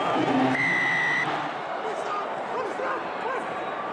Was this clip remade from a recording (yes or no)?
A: no